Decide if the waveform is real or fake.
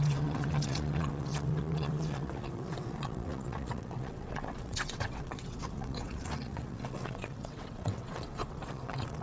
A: fake